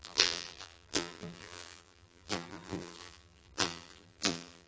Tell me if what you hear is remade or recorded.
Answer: remade